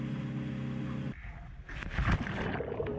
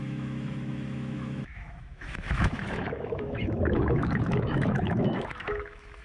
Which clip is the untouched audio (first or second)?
first